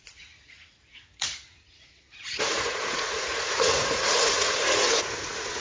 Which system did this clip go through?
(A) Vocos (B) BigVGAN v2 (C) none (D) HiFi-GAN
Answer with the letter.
A